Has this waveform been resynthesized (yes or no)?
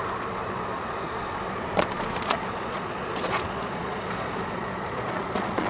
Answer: yes